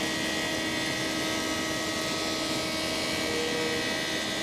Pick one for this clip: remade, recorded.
recorded